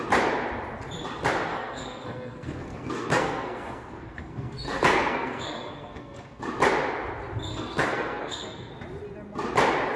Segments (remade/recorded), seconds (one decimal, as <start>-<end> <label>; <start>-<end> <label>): 0.0-1.5 recorded; 1.5-6.4 remade; 6.4-7.5 recorded; 7.5-8.7 remade; 8.7-10.0 recorded